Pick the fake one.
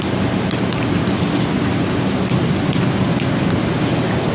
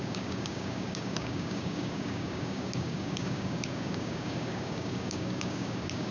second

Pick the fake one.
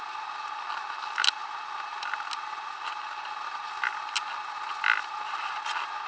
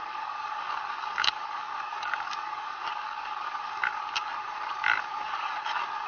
second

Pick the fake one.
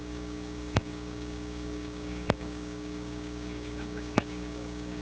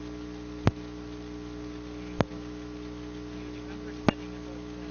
first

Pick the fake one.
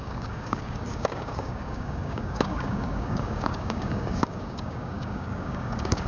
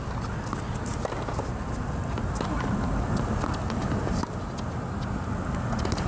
first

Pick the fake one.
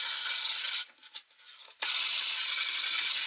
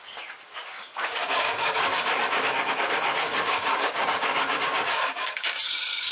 second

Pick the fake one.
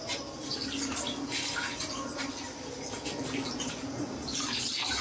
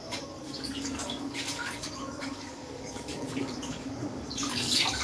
second